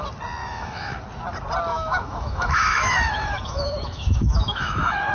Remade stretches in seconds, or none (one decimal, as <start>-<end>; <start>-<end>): 0.4-1.0; 1.7-5.1

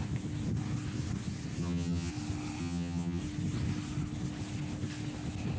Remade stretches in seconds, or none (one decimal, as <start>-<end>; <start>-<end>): 1.6-2.1; 2.6-3.2

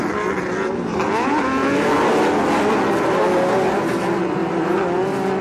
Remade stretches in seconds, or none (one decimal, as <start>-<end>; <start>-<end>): none

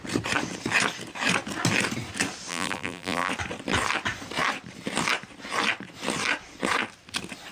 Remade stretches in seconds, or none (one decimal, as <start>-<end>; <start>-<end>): 2.5-3.3